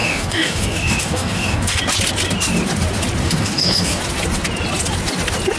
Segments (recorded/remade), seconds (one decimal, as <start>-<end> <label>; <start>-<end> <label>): 0.0-1.8 remade; 1.8-3.2 recorded; 3.2-4.0 remade; 4.0-5.6 recorded